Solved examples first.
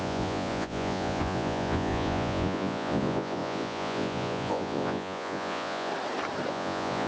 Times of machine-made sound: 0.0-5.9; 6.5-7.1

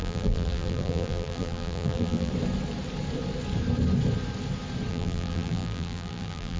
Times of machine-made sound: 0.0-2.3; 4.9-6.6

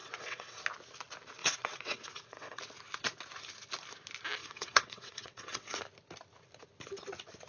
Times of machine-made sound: 0.0-0.6; 1.4-2.6; 4.4-5.8